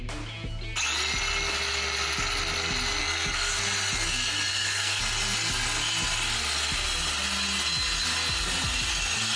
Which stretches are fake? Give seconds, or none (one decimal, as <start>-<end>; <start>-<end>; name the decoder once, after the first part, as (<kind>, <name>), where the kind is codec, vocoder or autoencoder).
3.0-3.5 (codec, SNAC); 4.5-5.0